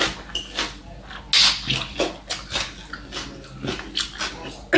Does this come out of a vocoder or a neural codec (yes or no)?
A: no